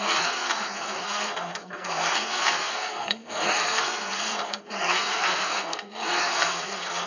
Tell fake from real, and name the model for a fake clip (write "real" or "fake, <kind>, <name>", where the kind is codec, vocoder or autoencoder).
fake, codec, SNAC